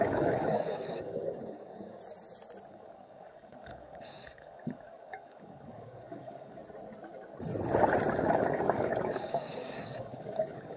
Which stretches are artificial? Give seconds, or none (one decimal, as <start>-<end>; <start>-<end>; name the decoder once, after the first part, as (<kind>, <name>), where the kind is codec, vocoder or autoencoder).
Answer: 0.0-2.0 (codec, DAC); 2.7-6.6; 8.2-10.8